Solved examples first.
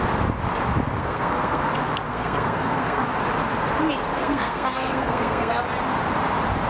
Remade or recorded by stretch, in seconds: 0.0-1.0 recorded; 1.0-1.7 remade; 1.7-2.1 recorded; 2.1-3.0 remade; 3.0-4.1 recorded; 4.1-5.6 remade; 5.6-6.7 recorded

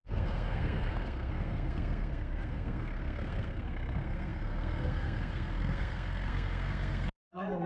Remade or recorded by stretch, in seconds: 0.0-7.7 remade

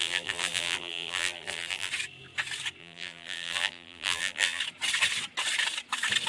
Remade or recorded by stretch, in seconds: 0.0-1.9 remade; 1.9-2.8 recorded; 2.8-4.6 remade; 4.6-6.3 recorded

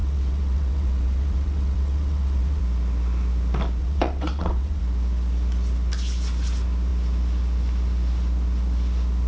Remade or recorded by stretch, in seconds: 0.0-2.6 remade; 2.6-3.8 recorded; 3.8-4.8 remade; 4.8-9.3 recorded

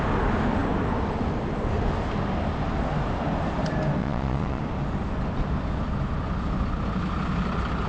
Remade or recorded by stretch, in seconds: 0.0-4.0 recorded; 4.0-4.6 remade; 4.6-7.9 recorded

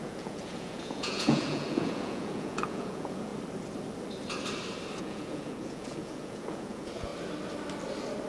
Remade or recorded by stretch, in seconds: 0.0-3.3 remade; 3.3-5.0 recorded; 5.0-7.1 remade; 7.1-8.3 recorded

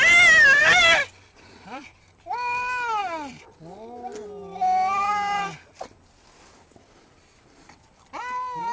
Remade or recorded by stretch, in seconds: 0.0-0.6 recorded; 0.6-2.0 remade; 2.0-8.7 recorded